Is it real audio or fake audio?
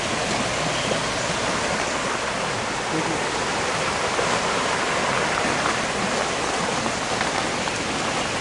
real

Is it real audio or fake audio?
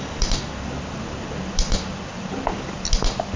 real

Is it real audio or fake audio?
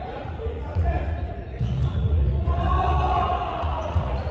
fake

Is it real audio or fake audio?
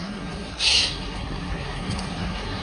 fake